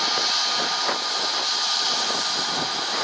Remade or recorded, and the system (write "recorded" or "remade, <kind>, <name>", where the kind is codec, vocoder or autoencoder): recorded